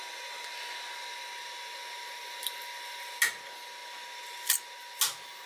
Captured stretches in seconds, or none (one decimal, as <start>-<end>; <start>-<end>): 0.0-5.5